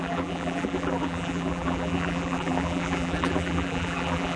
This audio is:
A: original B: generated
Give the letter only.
B